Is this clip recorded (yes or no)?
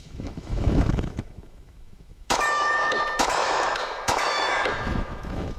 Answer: no